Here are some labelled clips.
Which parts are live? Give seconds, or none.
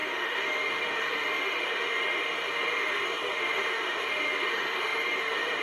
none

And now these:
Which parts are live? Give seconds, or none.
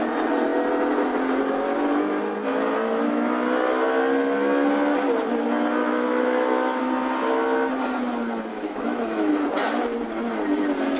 0.0-5.8; 6.8-8.5; 9.3-11.0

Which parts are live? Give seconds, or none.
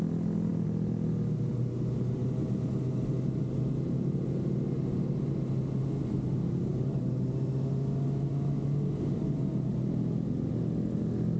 0.0-11.4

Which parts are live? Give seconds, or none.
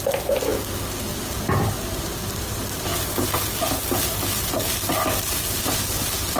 0.0-6.4